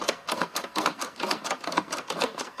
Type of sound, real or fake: fake